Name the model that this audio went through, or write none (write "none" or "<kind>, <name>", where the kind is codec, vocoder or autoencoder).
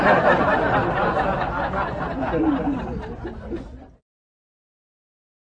none